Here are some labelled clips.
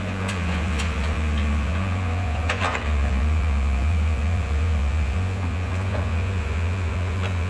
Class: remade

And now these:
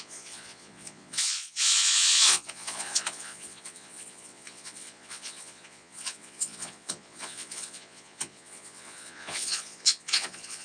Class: remade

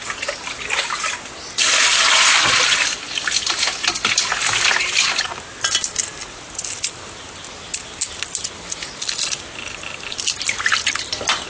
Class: recorded